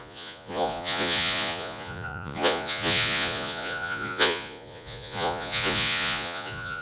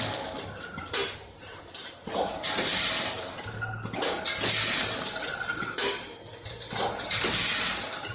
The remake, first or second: first